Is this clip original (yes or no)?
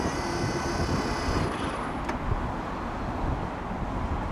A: yes